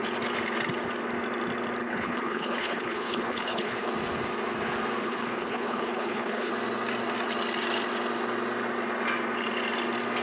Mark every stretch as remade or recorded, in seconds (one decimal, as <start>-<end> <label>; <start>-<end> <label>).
0.0-1.8 recorded; 1.8-3.9 remade; 3.9-5.0 recorded; 5.0-6.5 remade; 6.5-10.2 recorded